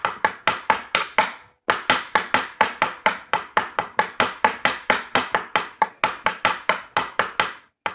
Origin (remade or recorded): recorded